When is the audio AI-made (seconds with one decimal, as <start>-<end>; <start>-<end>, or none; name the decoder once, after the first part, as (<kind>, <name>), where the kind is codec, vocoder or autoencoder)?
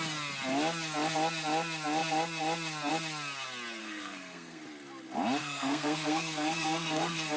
3.8-4.6 (codec, SNAC); 5.4-7.4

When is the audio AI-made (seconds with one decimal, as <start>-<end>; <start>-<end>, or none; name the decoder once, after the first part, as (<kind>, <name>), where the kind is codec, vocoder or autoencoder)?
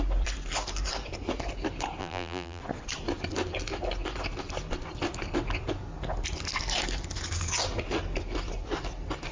2.0-2.6 (vocoder, BigVGAN v2)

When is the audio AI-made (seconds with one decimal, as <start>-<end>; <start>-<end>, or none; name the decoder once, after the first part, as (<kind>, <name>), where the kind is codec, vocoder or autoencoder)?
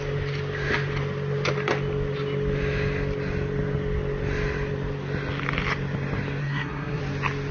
6.4-7.0 (codec, SNAC)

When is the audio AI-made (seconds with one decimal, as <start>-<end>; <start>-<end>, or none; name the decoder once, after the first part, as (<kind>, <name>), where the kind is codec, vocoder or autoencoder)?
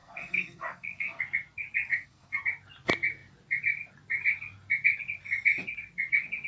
0.0-1.2 (codec, SNAC); 1.9-2.4